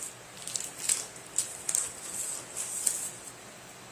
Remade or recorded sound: recorded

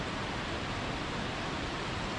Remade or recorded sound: recorded